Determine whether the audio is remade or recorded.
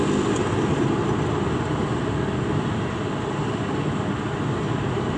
recorded